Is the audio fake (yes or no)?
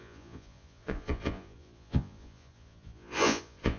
yes